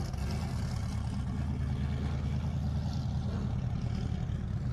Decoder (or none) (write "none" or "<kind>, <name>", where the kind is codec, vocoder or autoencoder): none